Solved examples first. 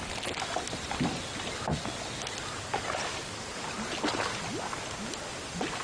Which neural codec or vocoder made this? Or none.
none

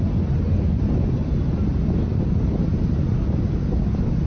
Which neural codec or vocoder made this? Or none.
none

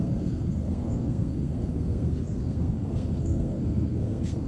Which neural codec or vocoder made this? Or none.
codec, SNAC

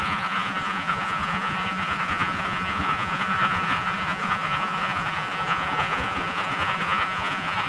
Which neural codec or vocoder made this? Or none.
vocoder, Vocos